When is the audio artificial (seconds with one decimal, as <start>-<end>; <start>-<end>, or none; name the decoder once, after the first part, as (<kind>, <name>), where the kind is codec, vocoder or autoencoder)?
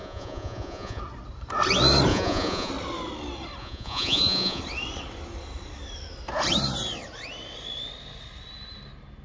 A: 0.0-1.0 (vocoder, Vocos); 2.1-2.7; 3.6-4.6